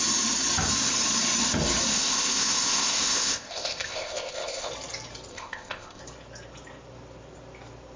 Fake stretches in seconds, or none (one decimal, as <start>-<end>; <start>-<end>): 1.9-4.7; 5.3-6.0